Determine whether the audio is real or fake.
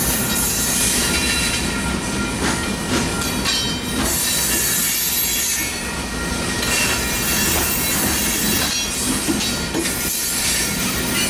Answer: real